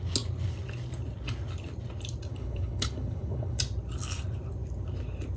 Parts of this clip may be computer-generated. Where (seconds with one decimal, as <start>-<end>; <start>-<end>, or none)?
2.3-3.6